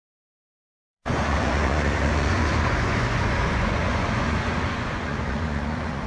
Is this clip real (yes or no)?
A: no